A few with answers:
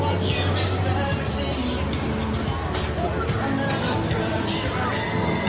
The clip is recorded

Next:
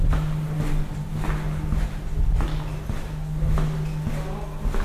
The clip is recorded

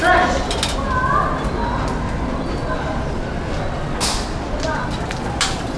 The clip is recorded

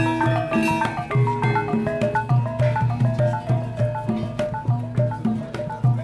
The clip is recorded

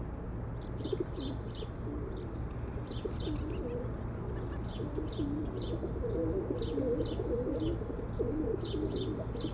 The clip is recorded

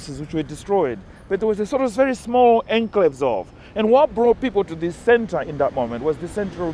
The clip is recorded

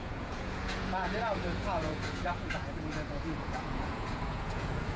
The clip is remade